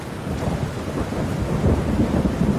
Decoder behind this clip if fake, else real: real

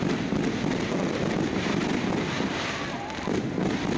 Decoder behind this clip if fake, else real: real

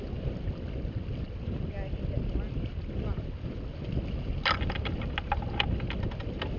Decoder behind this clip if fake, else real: real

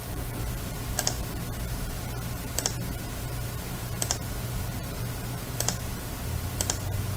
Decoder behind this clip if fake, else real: fake, vocoder, BigVGAN v2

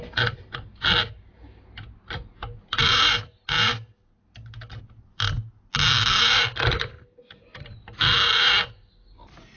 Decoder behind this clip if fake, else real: real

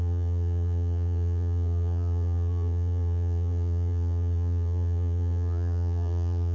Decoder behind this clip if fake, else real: fake, vocoder, BigVGAN v2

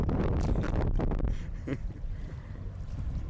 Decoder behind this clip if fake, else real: fake, vocoder, BigVGAN v2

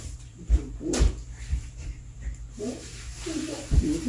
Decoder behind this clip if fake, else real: fake, vocoder, BigVGAN v2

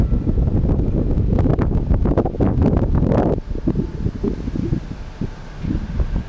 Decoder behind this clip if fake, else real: real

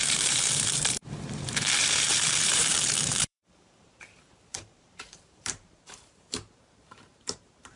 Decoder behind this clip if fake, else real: fake, vocoder, BigVGAN v2